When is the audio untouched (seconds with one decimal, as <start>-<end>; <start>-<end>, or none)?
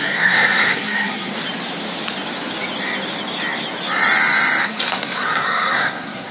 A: 1.3-4.6